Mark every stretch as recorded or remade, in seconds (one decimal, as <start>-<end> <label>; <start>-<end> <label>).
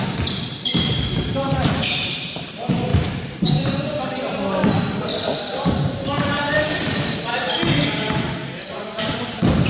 0.0-7.3 remade; 7.3-9.7 recorded